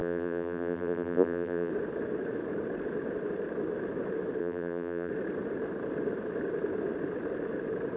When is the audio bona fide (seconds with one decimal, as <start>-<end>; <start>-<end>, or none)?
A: 1.7-4.4; 5.1-8.0